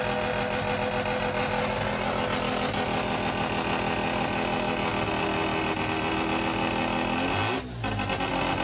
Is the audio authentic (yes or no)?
yes